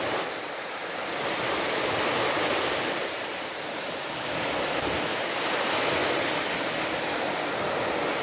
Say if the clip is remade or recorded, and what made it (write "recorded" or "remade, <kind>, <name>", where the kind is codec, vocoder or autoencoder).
recorded